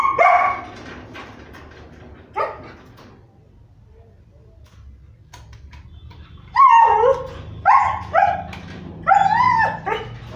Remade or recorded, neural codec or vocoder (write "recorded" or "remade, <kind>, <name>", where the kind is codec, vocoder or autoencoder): recorded